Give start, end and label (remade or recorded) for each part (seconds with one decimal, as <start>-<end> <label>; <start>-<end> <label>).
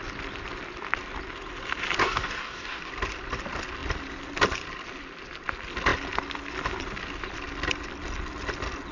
0.0-2.0 recorded; 2.0-2.9 remade; 2.9-8.9 recorded